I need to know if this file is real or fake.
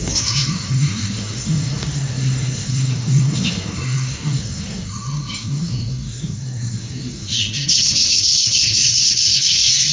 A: fake